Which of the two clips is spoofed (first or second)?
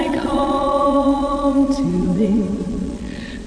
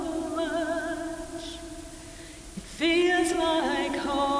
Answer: first